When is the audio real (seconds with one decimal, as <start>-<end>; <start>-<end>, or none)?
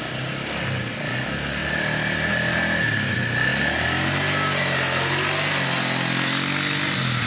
0.0-7.3